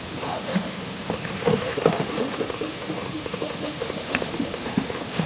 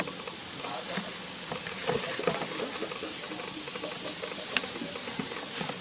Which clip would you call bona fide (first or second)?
second